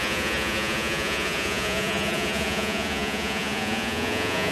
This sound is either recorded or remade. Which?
remade